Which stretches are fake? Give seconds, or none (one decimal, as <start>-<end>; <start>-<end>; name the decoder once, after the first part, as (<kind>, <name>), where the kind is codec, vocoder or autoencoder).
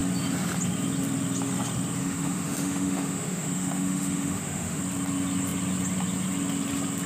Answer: 2.0-4.8 (autoencoder, DAC-VAE)